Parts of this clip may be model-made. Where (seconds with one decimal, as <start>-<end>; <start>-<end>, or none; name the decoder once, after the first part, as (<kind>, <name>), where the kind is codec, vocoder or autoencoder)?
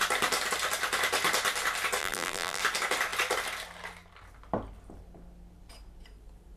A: 2.0-2.6 (vocoder, BigVGAN v2)